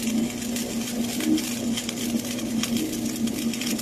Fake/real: real